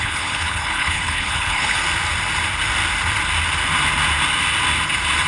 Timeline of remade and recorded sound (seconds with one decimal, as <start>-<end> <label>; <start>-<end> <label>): 0.0-1.8 remade; 1.8-5.3 recorded